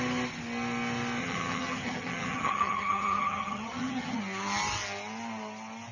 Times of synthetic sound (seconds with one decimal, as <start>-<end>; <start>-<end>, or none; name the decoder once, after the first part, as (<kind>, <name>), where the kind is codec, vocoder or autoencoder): 1.2-4.2 (vocoder, HiFi-GAN)